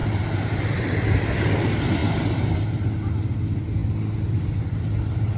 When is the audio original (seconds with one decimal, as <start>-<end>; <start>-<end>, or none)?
1.3-5.4